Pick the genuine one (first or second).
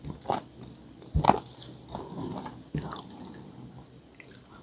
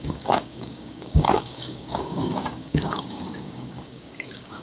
first